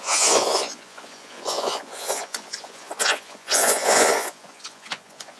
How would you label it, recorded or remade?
remade